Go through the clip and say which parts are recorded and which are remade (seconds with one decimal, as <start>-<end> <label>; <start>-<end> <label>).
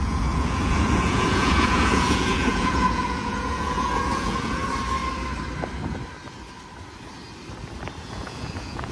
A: 0.0-4.6 remade; 4.6-8.0 recorded; 8.0-8.9 remade